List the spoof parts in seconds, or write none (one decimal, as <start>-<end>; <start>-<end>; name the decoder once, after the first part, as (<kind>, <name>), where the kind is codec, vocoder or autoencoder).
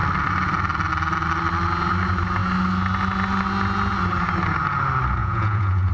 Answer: 5.2-5.9 (vocoder, Vocos)